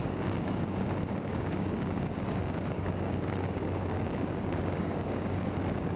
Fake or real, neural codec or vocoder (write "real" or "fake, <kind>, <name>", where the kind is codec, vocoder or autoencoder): fake, codec, DAC